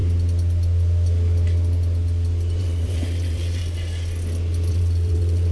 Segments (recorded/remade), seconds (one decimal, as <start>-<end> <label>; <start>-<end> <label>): 0.0-2.6 recorded; 2.6-3.6 remade; 3.6-4.7 recorded; 4.7-5.5 remade